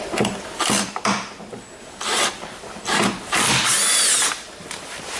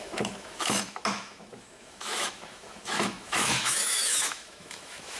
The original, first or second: first